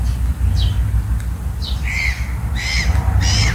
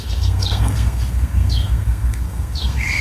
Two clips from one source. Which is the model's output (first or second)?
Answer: second